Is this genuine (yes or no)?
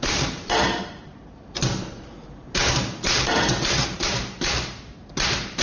no